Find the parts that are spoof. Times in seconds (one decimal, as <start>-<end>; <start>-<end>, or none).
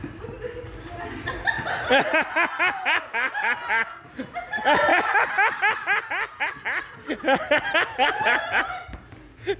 none